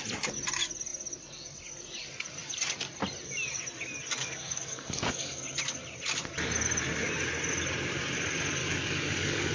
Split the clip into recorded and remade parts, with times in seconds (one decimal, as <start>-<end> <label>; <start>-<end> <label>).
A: 0.0-4.2 recorded; 4.2-5.4 remade; 5.4-8.6 recorded; 8.6-9.5 remade

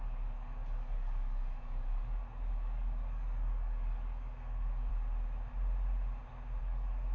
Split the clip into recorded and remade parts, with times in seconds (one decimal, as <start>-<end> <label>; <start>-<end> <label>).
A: 0.0-4.9 remade; 4.9-6.6 recorded; 6.6-7.1 remade

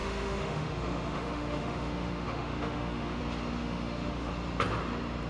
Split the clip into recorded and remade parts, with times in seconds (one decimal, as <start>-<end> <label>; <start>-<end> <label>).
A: 0.0-3.2 remade; 3.2-3.6 recorded; 3.6-4.3 remade; 4.3-5.3 recorded

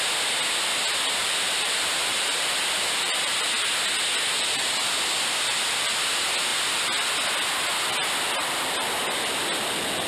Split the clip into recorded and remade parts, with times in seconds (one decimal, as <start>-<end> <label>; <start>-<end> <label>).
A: 0.0-1.2 recorded; 1.2-3.3 remade; 3.3-10.1 recorded

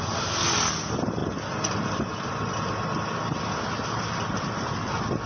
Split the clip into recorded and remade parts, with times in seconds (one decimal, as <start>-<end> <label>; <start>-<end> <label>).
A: 0.0-5.3 recorded

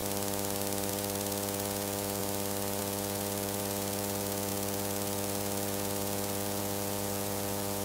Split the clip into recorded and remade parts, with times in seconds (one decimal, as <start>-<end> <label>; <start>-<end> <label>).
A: 0.0-0.9 recorded; 0.9-2.2 remade; 2.2-2.8 recorded; 2.8-7.8 remade

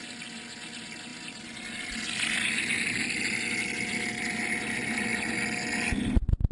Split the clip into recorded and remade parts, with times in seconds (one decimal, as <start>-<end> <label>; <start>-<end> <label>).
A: 0.0-6.5 recorded